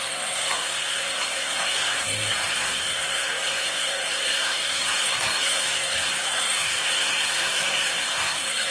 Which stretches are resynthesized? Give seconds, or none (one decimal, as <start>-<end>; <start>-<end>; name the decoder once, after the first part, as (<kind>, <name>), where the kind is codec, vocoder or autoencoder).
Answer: 0.0-8.7 (codec, SNAC)

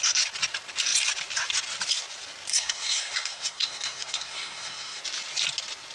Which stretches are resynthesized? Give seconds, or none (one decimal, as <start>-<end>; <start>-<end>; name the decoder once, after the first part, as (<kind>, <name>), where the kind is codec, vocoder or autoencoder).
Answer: 2.5-5.0 (codec, SNAC)

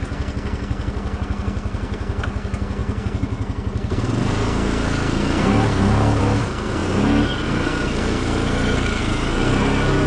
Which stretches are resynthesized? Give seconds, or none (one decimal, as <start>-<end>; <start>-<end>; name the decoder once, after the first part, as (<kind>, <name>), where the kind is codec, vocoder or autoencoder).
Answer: 0.0-10.1 (codec, SNAC)

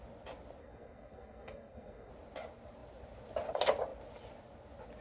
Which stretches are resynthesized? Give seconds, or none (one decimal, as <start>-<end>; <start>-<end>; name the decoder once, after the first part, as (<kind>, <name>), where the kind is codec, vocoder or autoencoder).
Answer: 0.6-2.1 (codec, SNAC)

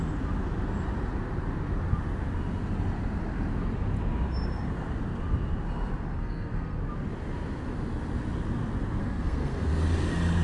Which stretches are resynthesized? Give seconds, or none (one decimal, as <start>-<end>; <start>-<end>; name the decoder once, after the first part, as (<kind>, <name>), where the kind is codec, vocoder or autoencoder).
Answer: 6.2-6.8 (codec, SNAC); 9.0-9.7

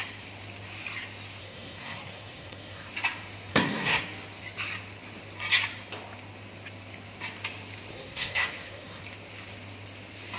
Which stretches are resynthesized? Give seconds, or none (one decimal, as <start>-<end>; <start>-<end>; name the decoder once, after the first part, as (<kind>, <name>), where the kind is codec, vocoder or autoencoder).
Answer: 1.4-2.9 (codec, SNAC); 3.5-4.0; 7.9-9.0

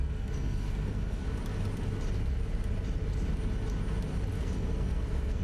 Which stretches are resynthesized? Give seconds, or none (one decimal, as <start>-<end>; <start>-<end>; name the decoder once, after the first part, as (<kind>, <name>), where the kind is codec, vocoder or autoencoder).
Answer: 0.0-1.2 (codec, SNAC); 4.4-5.4

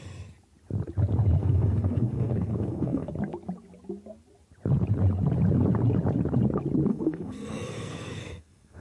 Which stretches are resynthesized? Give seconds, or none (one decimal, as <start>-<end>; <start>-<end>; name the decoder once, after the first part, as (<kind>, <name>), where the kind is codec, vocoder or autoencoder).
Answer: 1.4-3.1 (codec, SNAC); 6.9-8.8